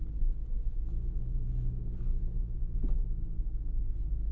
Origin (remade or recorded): recorded